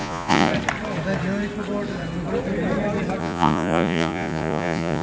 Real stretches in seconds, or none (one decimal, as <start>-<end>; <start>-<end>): 0.5-3.2